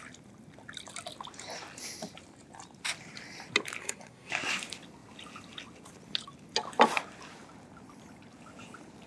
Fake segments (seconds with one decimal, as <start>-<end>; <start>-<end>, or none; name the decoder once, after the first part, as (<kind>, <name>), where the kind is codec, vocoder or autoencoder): 3.8-4.3 (codec, SNAC)